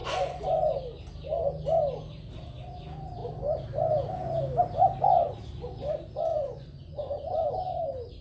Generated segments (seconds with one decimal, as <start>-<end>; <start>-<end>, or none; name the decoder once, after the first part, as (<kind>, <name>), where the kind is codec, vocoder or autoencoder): 0.0-0.7 (vocoder, Vocos); 6.3-7.5